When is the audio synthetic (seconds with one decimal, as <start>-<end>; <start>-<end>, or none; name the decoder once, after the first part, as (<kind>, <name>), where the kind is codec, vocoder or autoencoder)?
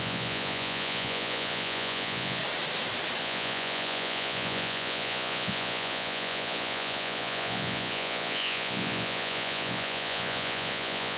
0.0-2.4 (vocoder, Vocos); 3.2-11.2